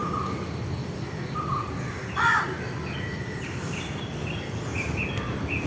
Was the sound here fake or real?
real